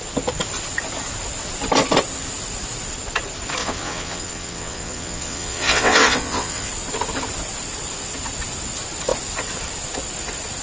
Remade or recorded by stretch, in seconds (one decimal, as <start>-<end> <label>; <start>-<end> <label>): 0.0-3.6 recorded; 3.6-6.7 remade; 6.7-10.6 recorded